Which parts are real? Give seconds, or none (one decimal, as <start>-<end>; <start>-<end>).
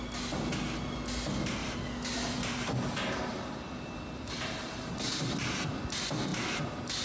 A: 0.0-1.6; 5.8-6.3